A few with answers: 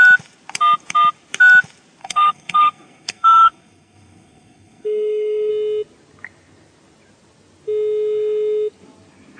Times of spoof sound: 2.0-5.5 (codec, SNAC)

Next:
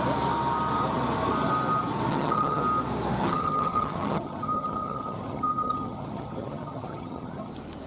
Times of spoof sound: 2.1-2.6 (vocoder, HiFi-GAN); 3.2-7.5

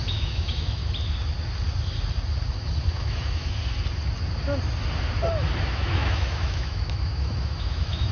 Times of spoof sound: 0.0-0.8 (autoencoder, DAC-VAE); 2.9-3.6; 5.6-8.1

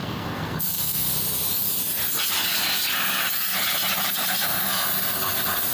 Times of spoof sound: 0.0-1.1 (codec, SNAC)

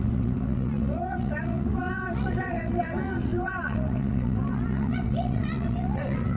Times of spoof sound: 0.0-6.4 (vocoder, WaveNeXt)

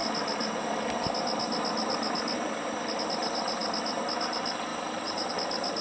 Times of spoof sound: 4.7-5.3 (vocoder, BigVGAN v2)

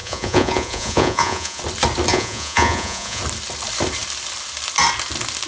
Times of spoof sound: 0.0-1.6 (vocoder, Vocos); 2.1-3.2

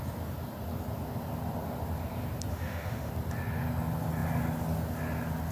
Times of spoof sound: 2.5-3.1 (autoencoder, DAC-VAE)